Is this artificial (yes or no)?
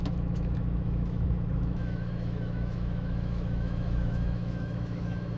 yes